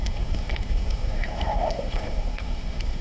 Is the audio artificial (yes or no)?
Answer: yes